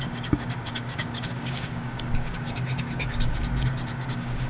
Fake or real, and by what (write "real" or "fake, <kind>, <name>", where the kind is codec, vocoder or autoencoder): fake, codec, DAC